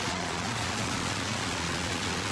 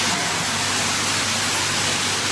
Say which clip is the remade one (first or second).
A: first